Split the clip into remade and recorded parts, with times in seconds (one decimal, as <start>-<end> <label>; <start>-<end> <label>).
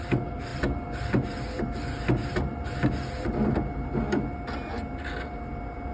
0.0-5.9 recorded